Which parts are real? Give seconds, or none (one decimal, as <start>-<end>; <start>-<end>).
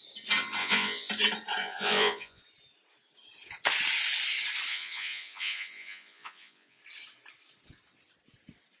0.0-0.6; 1.1-1.6; 2.4-4.7; 6.8-8.8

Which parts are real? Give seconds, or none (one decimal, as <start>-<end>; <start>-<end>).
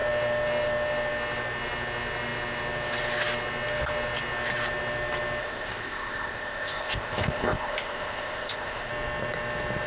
0.0-5.4; 8.9-9.9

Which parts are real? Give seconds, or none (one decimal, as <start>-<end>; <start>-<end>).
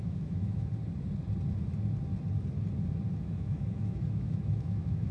0.7-3.2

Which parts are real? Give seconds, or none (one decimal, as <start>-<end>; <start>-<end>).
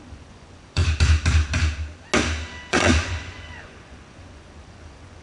0.8-2.7